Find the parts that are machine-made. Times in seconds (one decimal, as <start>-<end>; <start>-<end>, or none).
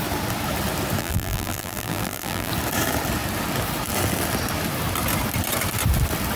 1.0-2.5